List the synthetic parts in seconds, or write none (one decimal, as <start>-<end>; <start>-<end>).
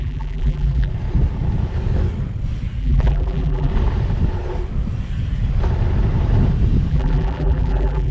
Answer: 0.0-0.9; 2.8-3.7; 6.9-8.1